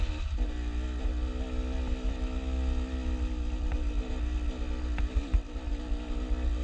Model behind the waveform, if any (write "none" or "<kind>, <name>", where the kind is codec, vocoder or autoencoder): none